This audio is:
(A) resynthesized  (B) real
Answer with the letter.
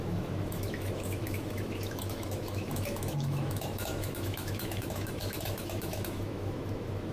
A